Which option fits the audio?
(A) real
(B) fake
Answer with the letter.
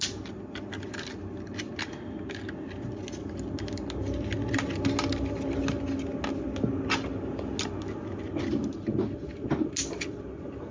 A